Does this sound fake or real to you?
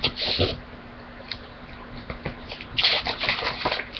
real